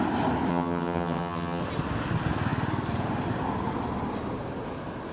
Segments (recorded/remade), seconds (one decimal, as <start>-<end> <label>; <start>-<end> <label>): 0.0-0.5 recorded; 0.5-1.6 remade; 1.6-5.1 recorded